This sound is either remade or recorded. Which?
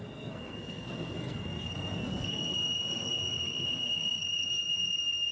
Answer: remade